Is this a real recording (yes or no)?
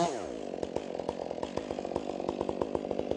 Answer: yes